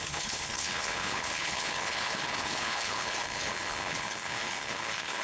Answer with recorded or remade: remade